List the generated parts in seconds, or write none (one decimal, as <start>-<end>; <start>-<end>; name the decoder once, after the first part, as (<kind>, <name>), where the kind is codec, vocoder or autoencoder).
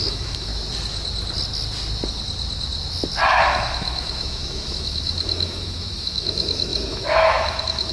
0.0-0.5 (autoencoder, DAC-VAE); 3.3-7.9